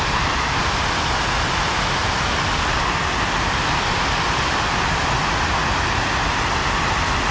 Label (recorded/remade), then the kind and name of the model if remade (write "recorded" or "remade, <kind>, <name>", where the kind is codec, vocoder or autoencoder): recorded